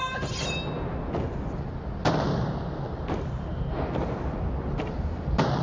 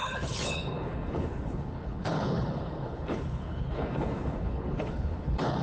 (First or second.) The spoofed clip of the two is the second